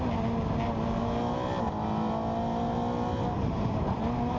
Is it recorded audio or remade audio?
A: recorded